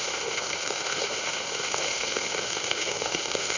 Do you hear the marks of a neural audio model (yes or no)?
yes